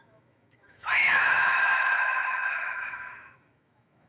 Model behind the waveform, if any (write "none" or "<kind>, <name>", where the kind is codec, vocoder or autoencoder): autoencoder, DAC-VAE